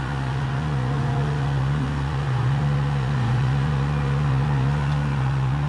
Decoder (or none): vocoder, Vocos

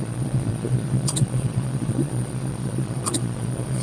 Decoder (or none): vocoder, Vocos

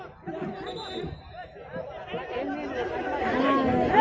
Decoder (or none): none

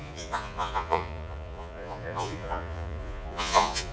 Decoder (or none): vocoder, Vocos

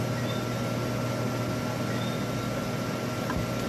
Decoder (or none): none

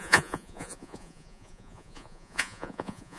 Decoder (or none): vocoder, Vocos